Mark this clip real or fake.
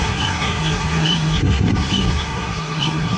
fake